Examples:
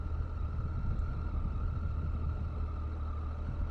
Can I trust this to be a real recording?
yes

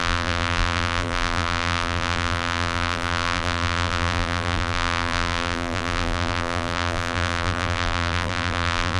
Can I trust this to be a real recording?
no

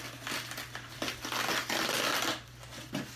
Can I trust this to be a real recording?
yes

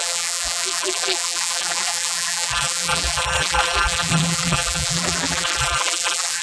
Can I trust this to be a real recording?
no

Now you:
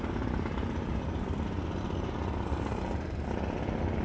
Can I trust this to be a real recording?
yes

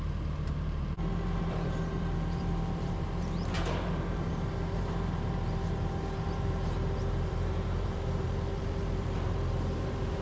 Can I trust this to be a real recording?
no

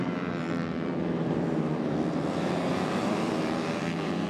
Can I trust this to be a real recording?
no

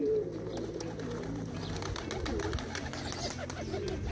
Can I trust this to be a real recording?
yes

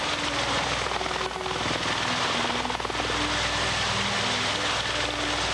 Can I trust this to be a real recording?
yes